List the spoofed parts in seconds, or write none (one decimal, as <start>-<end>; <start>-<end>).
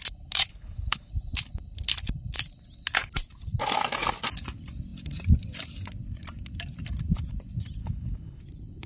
0.5-1.1; 7.8-8.4